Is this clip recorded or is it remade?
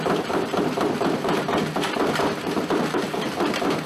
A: remade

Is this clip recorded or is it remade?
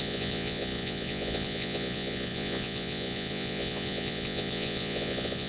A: remade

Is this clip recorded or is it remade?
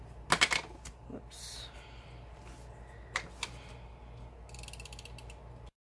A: recorded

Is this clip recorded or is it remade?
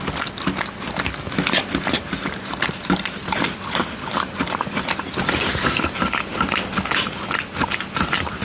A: recorded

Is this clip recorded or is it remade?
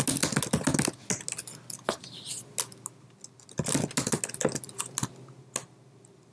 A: recorded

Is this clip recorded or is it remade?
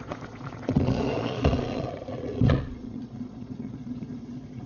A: remade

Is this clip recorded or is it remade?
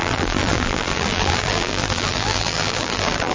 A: remade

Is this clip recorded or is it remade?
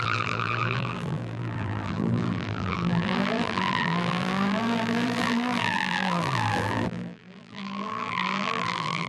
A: remade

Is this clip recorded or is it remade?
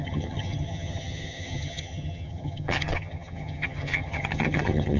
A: remade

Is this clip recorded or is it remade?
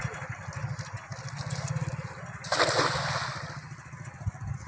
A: recorded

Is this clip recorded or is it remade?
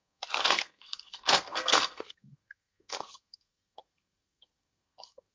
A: remade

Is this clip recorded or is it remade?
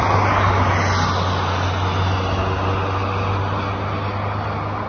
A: recorded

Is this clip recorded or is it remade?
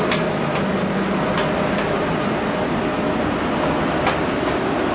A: recorded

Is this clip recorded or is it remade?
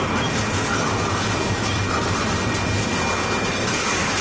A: recorded